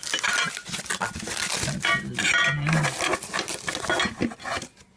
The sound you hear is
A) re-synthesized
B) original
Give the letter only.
B